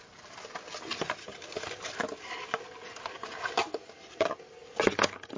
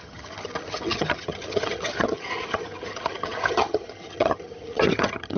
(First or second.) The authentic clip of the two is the first